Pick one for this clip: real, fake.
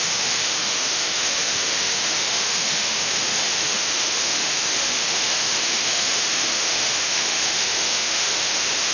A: fake